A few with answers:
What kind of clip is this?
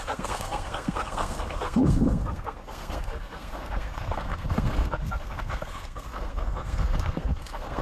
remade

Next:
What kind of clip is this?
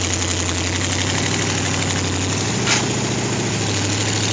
recorded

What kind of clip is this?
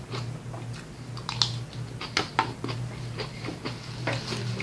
recorded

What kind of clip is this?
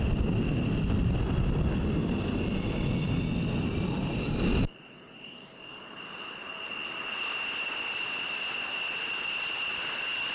recorded